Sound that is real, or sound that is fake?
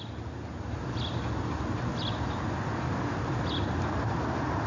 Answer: real